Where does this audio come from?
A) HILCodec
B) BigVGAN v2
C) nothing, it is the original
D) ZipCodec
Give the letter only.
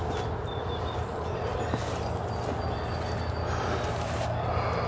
C